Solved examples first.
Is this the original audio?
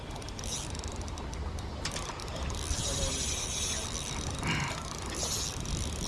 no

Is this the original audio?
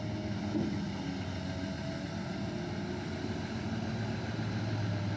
yes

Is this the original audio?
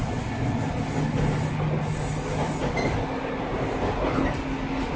yes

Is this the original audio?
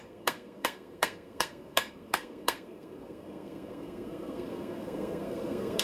no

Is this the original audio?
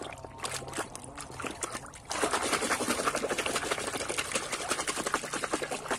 yes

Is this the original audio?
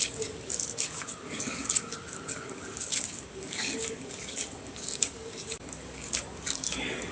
no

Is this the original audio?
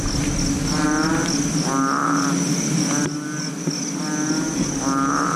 yes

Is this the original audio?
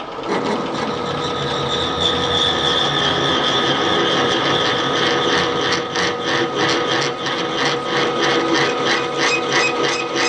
yes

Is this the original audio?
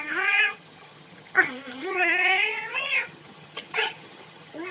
no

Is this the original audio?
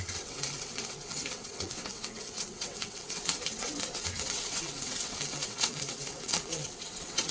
no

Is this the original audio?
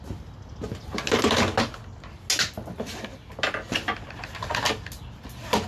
yes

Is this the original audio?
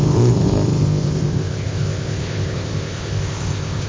no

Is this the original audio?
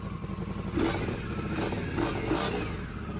yes